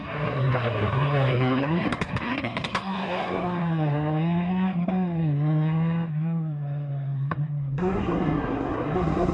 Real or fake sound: fake